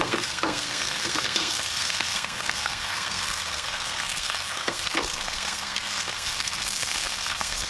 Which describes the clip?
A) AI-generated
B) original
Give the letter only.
A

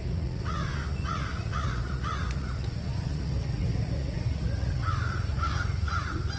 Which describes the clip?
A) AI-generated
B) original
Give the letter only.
A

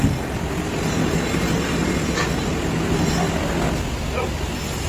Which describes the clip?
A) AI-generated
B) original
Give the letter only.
B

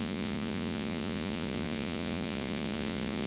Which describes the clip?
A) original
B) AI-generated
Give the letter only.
B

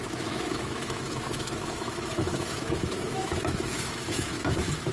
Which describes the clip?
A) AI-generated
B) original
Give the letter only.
A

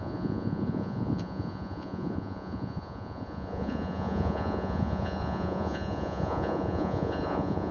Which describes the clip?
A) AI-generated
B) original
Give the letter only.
A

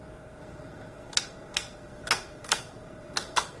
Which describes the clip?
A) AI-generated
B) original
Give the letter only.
A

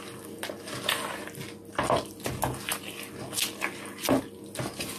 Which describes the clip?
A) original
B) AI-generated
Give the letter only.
A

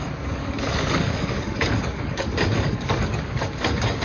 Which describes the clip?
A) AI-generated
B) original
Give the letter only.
A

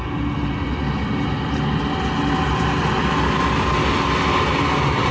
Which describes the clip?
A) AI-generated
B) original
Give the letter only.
B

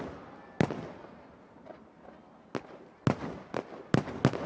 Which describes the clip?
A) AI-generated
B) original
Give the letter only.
B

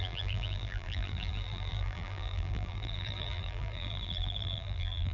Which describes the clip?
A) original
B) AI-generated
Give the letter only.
B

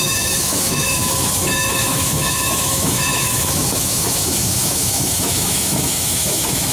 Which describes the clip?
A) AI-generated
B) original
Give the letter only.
A